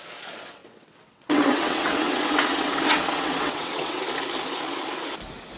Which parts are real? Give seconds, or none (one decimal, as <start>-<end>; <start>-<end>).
0.0-0.6; 4.0-5.6